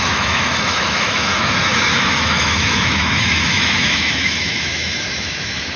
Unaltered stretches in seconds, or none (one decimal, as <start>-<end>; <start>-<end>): none